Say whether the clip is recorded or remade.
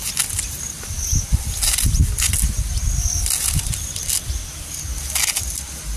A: recorded